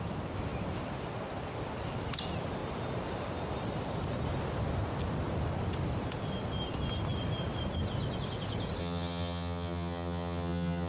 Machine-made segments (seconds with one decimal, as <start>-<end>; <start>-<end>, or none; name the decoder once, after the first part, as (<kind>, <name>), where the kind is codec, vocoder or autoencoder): 8.8-10.9 (vocoder, HiFi-GAN)